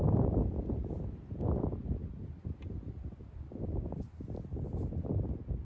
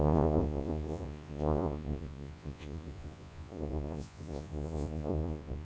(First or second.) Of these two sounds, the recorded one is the first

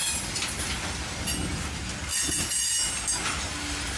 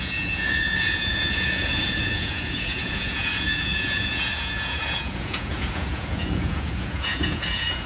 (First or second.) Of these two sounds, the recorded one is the first